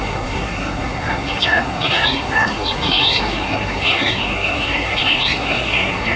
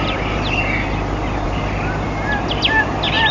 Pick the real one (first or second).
second